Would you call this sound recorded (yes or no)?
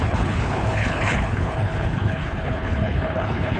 no